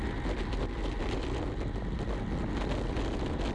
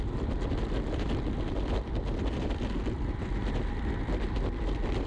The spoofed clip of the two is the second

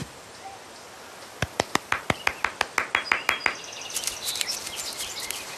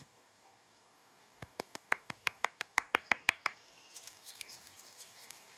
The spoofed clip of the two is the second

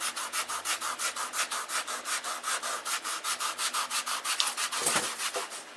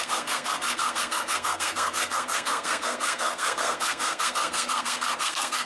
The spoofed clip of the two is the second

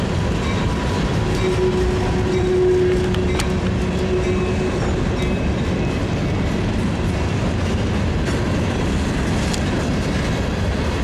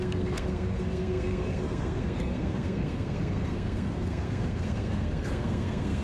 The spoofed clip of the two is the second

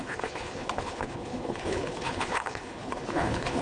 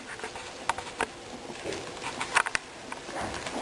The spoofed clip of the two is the first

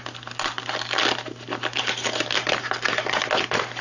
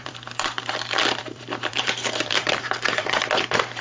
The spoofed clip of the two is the second